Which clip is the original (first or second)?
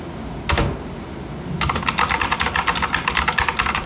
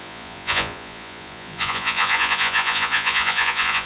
first